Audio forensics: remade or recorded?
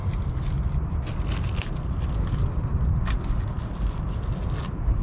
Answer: recorded